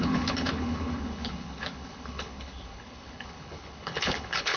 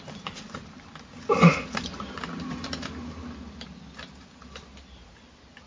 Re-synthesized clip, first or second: first